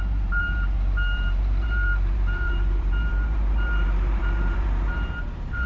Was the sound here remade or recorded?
remade